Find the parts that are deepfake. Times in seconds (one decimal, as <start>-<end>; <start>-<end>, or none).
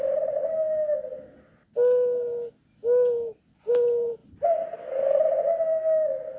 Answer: none